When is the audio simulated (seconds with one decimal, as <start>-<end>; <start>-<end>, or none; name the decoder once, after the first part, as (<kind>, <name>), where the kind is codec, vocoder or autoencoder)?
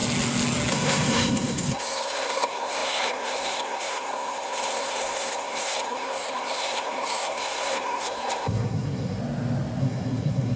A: 0.7-9.2 (codec, SNAC); 9.8-10.6